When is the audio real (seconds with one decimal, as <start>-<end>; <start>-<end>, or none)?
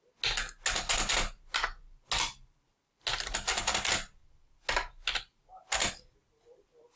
0.0-7.0